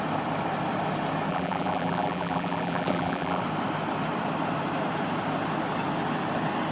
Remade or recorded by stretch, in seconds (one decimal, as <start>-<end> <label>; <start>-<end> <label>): 0.0-1.3 recorded; 1.3-3.4 remade; 3.4-6.7 recorded